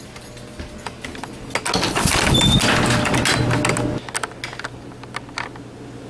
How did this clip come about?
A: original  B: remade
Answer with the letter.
A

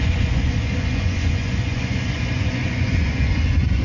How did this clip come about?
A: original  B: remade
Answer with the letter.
B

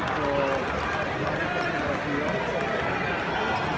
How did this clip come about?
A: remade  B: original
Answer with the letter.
B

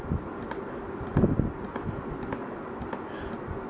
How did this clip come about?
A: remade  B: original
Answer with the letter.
B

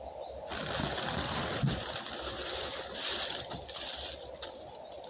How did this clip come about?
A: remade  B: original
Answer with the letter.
B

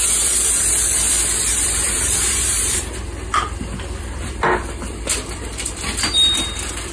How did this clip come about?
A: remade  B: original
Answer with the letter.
A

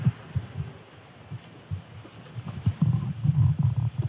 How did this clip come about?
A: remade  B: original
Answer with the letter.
B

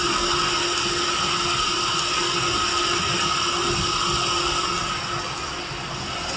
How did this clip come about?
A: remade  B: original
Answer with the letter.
B